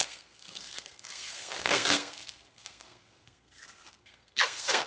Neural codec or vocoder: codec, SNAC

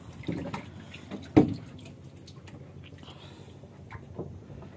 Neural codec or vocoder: none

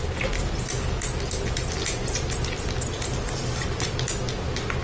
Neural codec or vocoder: none